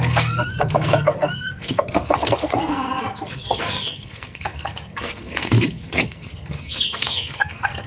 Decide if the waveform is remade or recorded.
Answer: remade